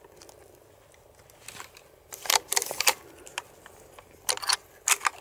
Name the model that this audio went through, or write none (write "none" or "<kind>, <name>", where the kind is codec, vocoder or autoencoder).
none